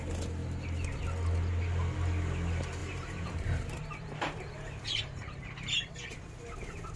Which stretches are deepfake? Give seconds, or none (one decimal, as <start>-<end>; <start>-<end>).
2.8-5.9